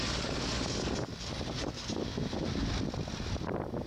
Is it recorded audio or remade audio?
recorded